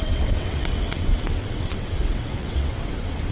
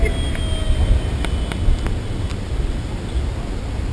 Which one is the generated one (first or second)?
first